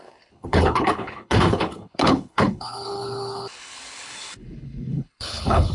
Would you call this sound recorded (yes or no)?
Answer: no